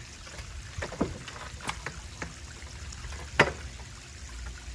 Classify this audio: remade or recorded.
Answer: recorded